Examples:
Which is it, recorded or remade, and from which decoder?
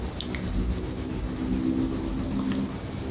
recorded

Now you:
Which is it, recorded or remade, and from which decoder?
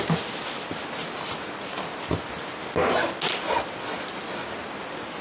recorded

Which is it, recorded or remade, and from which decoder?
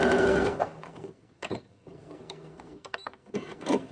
remade, codec, SNAC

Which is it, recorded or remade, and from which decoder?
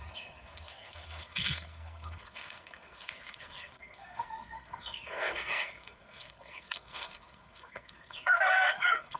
remade, codec, SNAC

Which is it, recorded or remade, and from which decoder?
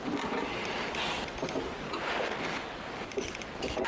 recorded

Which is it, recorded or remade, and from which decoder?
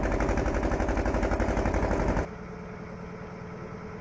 recorded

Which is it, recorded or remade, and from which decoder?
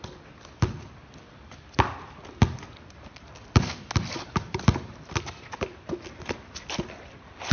recorded